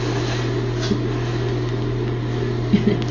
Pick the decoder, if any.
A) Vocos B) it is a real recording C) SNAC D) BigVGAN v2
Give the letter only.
B